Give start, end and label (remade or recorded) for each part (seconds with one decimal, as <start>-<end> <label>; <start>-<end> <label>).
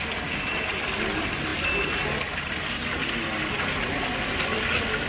0.0-5.1 recorded